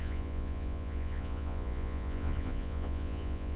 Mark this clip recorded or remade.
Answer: remade